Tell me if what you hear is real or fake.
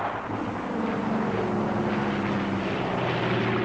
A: real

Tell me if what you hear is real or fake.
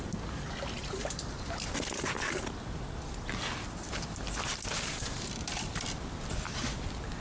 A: real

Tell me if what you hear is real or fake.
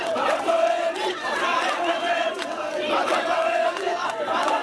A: fake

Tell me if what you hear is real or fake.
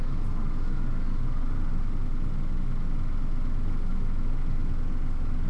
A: real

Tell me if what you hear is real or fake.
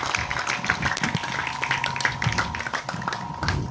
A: real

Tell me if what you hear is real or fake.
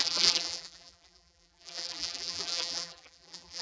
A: fake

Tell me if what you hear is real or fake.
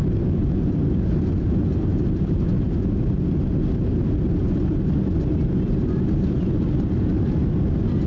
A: real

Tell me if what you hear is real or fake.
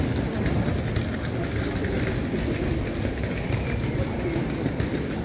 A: real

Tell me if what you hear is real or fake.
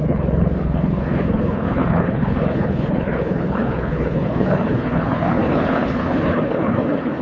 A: fake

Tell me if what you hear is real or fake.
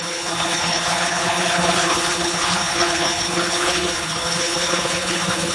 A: fake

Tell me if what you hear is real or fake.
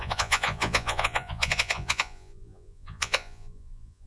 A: fake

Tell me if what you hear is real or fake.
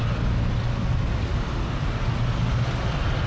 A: real